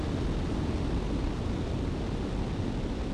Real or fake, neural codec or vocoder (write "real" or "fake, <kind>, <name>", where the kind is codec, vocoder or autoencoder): real